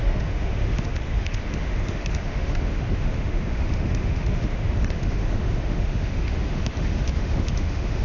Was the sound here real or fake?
fake